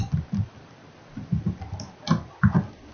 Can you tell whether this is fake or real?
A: real